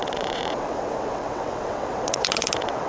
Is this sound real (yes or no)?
no